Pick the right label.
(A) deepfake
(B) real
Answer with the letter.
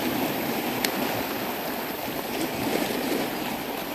B